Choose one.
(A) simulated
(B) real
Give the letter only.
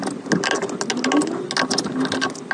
B